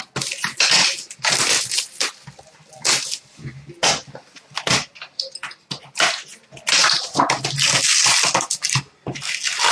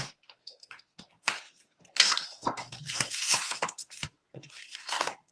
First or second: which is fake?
second